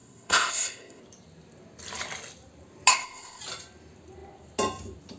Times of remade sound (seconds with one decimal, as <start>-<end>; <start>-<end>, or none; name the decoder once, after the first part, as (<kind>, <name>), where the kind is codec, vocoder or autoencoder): 0.0-1.0 (codec, ZipCodec); 2.9-3.4